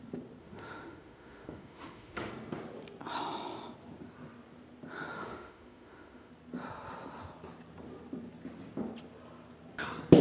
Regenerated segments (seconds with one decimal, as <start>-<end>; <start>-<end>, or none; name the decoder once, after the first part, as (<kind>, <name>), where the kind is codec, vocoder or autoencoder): 0.4-2.3 (autoencoder, DAC-VAE); 5.1-6.3